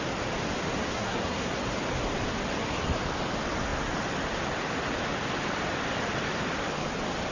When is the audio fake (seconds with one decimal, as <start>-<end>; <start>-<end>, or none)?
0.9-1.5